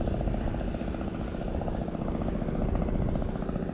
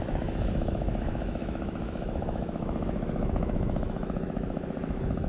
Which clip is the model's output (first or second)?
second